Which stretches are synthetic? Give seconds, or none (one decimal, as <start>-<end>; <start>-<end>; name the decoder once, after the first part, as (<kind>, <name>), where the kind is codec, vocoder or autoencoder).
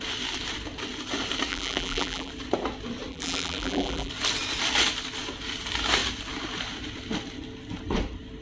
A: 1.5-2.3 (vocoder, BigVGAN v2); 3.1-4.1